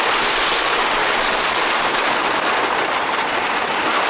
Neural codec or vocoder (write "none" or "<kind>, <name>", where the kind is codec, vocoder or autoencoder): none